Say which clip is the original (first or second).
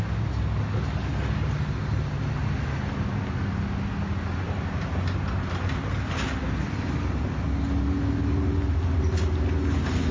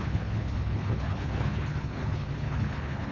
first